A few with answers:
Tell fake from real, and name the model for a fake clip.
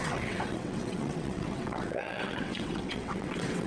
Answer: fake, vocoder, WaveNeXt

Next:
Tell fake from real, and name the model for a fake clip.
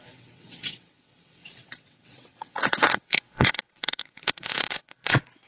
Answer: fake, vocoder, WaveNeXt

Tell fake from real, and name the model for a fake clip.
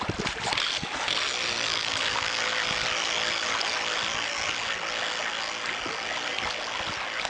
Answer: real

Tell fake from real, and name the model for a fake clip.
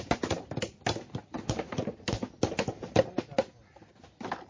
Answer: real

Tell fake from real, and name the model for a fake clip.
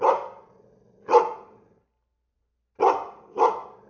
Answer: real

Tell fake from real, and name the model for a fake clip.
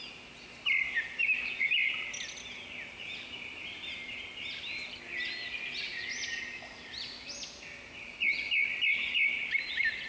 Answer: real